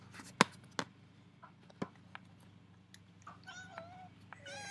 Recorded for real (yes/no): yes